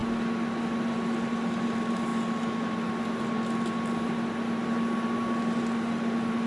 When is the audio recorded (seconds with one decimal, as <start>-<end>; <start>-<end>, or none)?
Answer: 0.0-0.6